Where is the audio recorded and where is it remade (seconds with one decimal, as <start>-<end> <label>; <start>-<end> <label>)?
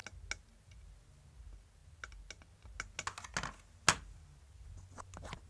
0.0-5.5 recorded